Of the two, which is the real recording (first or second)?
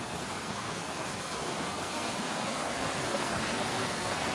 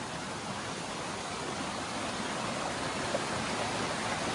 second